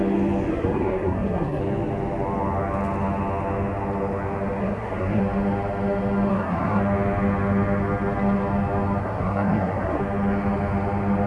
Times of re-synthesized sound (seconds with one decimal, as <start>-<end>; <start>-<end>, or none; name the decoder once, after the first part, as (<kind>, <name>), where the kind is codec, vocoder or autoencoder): 0.5-1.6 (codec, SNAC); 4.6-5.2; 6.3-6.8; 9.0-10.0